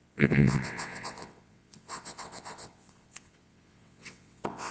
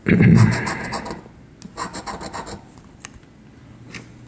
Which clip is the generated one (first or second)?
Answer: first